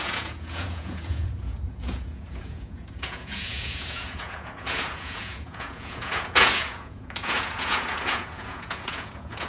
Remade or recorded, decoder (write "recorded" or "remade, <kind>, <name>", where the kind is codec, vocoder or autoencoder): remade, vocoder, Vocos